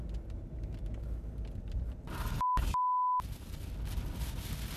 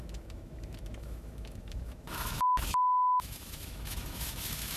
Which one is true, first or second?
first